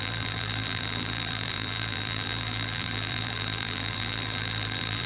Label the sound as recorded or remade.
remade